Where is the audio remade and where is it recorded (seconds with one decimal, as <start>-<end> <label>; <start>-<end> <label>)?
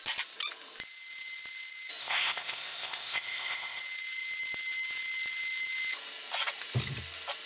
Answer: 0.0-2.0 recorded; 2.0-3.8 remade; 3.8-7.5 recorded